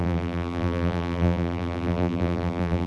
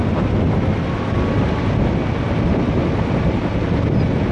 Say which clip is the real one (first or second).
second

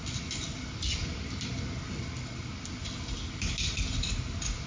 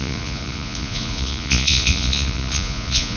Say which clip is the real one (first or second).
first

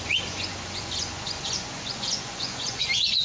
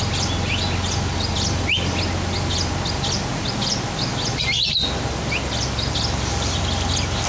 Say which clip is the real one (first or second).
second